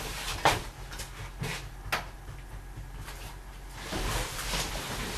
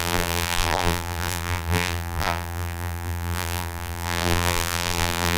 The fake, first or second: second